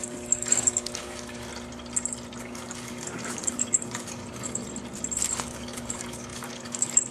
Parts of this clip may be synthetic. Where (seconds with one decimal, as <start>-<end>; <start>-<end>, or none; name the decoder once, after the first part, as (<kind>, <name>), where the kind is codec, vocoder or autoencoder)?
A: 0.0-1.5 (codec, DAC); 2.4-4.6; 5.4-7.1